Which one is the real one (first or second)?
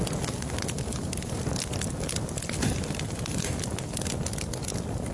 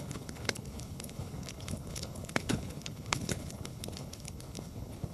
first